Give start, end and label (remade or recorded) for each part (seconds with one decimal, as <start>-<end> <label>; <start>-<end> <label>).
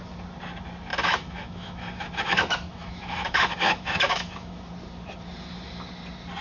0.0-0.9 recorded; 0.9-4.7 remade; 4.7-6.4 recorded